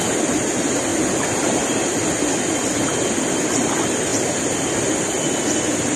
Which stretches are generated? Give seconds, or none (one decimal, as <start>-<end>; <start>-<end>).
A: none